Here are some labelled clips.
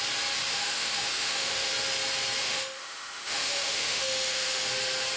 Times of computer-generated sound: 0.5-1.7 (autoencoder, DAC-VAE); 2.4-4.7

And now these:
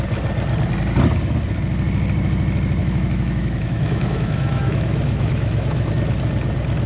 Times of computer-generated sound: 2.8-5.9 (autoencoder, DAC-VAE)

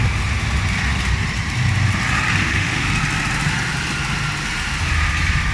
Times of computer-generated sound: 2.4-2.9 (autoencoder, DAC-VAE)